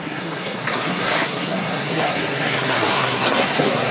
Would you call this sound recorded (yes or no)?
no